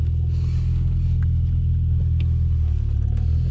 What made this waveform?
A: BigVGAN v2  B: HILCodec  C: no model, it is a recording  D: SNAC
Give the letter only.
C